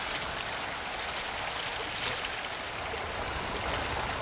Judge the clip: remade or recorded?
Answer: recorded